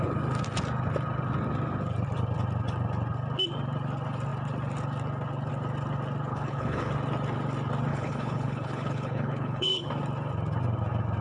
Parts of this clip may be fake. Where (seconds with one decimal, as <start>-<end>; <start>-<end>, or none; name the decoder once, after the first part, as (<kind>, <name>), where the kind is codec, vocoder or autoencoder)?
6.3-6.9 (codec, HILCodec); 7.9-9.9

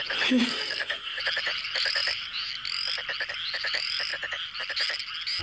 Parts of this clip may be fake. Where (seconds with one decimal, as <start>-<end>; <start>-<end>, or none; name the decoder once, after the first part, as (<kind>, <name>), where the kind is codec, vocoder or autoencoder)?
0.4-1.2 (codec, SNAC)

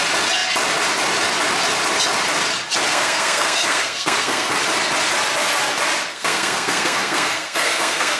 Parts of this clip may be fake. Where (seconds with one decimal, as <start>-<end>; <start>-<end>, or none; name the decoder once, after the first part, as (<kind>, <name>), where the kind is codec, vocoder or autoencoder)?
2.9-4.5 (codec, SNAC); 6.1-8.2